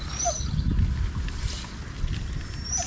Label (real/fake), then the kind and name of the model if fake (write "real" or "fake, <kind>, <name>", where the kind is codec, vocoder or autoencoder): real